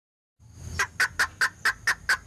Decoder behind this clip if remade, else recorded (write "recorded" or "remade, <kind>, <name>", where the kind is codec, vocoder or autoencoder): recorded